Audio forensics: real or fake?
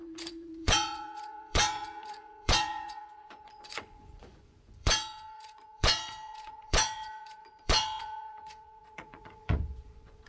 fake